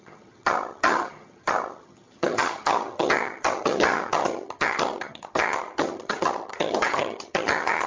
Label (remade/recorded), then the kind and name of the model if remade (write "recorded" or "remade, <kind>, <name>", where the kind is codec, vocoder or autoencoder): remade, vocoder, HiFi-GAN